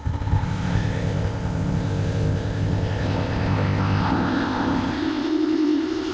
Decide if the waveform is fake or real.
fake